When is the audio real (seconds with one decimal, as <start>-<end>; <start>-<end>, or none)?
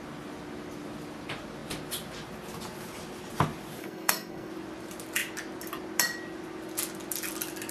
0.0-3.8; 4.5-7.7